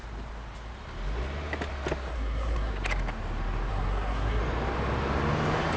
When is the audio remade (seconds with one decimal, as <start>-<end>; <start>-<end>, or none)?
2.1-2.7; 3.7-4.4